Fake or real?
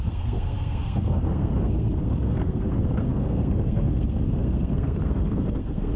fake